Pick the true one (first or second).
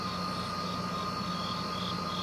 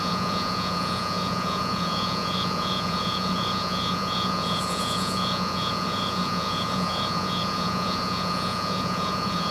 first